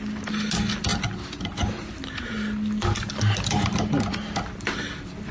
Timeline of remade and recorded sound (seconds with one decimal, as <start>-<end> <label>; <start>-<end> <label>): 0.0-5.3 recorded